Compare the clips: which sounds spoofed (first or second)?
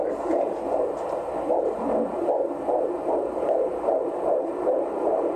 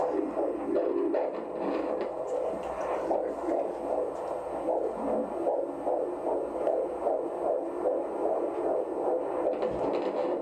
first